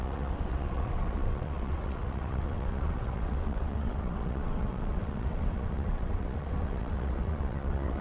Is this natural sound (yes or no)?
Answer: no